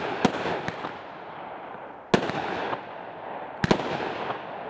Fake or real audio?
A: real